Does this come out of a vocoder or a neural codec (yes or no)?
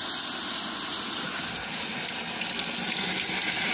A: no